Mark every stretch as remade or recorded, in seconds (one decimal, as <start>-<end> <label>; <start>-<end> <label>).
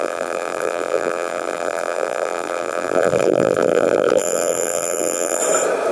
0.0-5.4 remade; 5.4-5.9 recorded